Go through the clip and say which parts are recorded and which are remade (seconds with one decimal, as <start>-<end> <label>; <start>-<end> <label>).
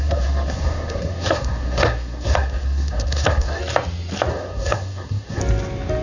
0.0-3.6 remade; 3.6-4.3 recorded; 4.3-5.4 remade; 5.4-6.0 recorded